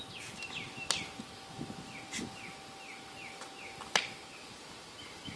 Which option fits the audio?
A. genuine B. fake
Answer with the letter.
A